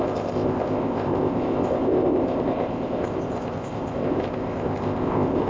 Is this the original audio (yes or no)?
no